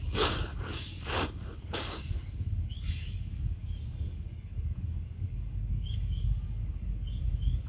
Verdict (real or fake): fake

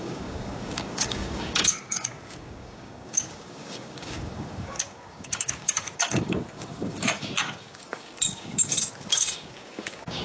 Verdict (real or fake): fake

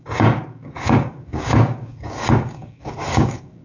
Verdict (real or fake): fake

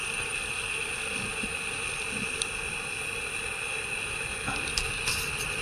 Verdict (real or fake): real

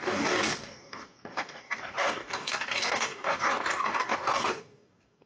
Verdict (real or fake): fake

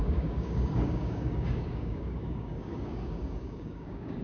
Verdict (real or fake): fake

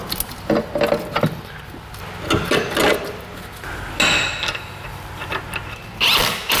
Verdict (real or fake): real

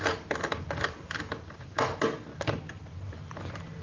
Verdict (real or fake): real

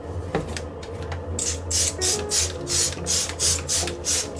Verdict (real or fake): real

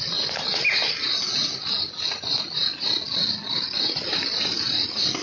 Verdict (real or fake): real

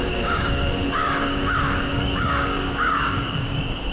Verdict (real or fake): fake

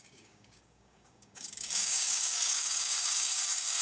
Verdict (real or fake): fake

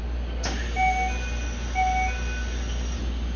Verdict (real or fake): real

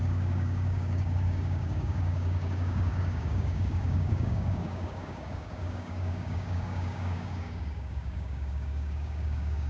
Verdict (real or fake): fake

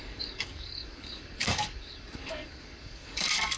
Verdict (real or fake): fake